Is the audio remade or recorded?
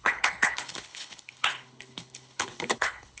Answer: remade